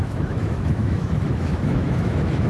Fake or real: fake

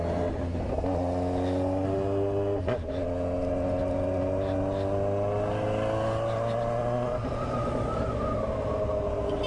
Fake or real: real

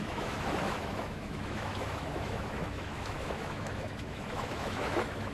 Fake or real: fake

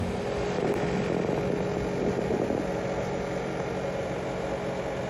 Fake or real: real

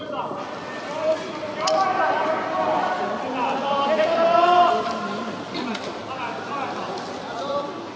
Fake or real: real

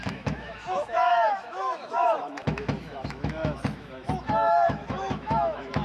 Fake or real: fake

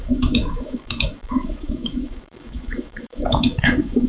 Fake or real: fake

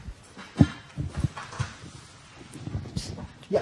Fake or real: real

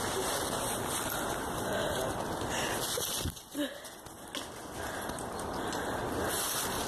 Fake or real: real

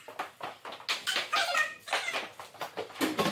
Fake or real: real